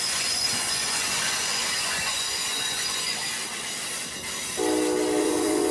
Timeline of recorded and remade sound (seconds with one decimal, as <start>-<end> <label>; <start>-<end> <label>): 0.0-3.2 remade; 3.2-5.2 recorded; 5.2-5.7 remade